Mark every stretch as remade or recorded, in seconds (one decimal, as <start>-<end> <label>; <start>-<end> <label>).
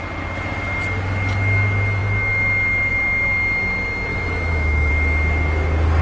0.0-4.1 recorded; 4.1-4.9 remade; 4.9-6.0 recorded